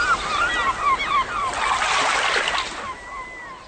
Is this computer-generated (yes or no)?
no